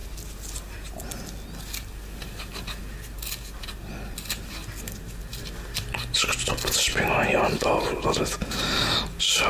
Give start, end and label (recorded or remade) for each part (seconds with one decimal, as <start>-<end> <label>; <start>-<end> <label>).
0.0-9.5 recorded